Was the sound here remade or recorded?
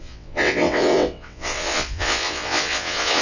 remade